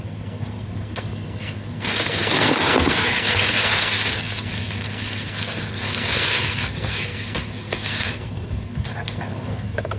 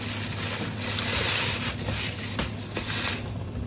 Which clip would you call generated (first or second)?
first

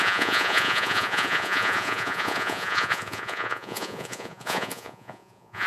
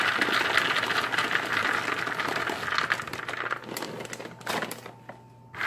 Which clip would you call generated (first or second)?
first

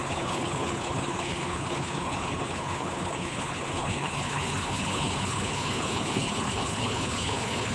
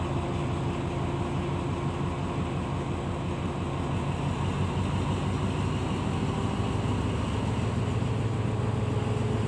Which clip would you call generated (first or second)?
first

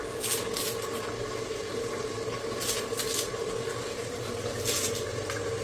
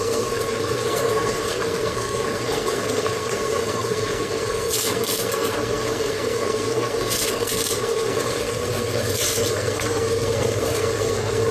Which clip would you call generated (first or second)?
second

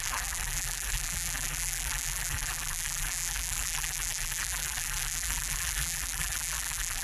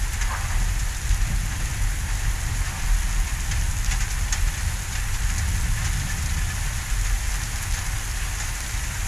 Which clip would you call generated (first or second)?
first